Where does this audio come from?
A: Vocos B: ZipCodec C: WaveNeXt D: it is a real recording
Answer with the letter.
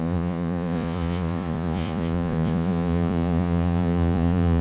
A